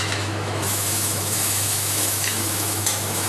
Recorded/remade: remade